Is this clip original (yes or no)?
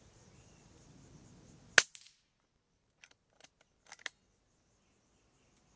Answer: yes